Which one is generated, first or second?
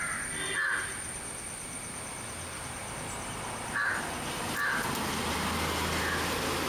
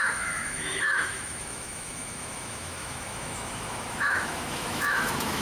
second